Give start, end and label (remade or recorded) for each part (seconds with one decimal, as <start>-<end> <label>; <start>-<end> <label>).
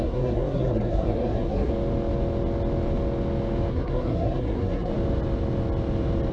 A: 0.0-1.7 remade; 1.7-3.7 recorded; 3.7-4.9 remade; 4.9-6.3 recorded